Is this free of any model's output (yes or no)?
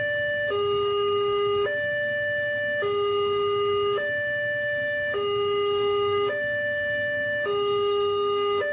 no